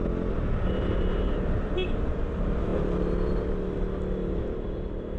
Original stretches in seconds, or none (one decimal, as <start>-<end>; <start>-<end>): 0.0-5.2